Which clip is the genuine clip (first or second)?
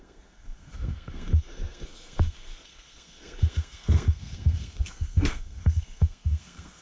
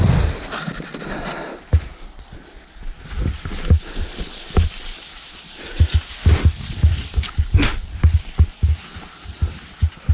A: second